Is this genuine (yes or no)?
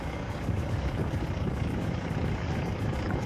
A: no